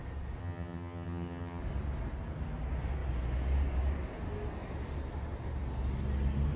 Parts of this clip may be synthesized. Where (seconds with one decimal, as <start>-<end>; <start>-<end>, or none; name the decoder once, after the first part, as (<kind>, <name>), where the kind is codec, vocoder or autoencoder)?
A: 0.4-1.6 (vocoder, HiFi-GAN)